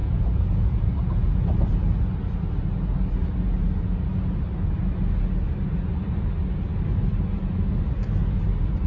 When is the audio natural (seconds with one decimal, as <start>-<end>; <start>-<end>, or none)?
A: 0.9-8.9